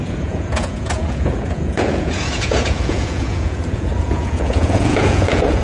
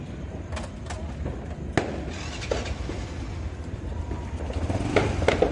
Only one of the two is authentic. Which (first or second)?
second